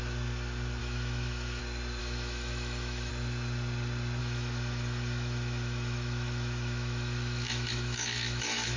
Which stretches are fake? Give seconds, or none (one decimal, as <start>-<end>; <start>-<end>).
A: 0.8-1.6; 2.0-3.1; 4.2-8.8

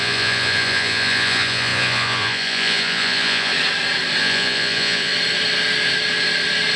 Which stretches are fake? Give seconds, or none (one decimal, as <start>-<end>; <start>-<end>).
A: 0.0-3.5; 4.2-5.1